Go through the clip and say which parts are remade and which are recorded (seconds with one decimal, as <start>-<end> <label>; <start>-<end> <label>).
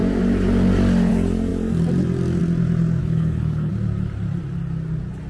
0.0-3.0 recorded; 3.0-3.7 remade; 3.7-5.3 recorded